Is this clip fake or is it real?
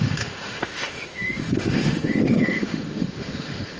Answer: fake